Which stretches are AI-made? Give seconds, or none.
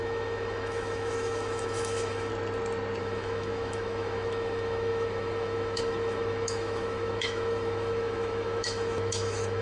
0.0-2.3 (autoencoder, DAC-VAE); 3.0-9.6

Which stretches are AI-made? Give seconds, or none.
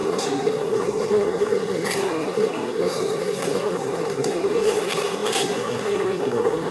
0.0-6.7 (codec, SNAC)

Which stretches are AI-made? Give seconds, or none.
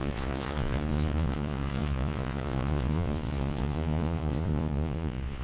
0.0-5.4 (vocoder, Vocos)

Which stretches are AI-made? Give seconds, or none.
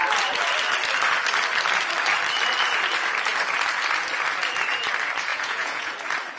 5.3-5.9 (vocoder, Vocos)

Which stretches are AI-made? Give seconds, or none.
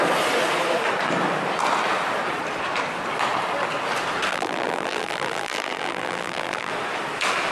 4.3-6.7 (vocoder, BigVGAN v2)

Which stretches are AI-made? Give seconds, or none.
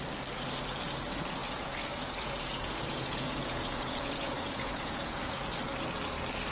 1.4-5.3 (vocoder, Vocos)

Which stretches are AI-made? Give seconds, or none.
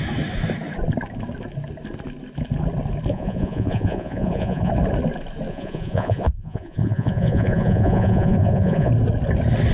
3.1-4.7 (vocoder, Vocos); 5.5-8.9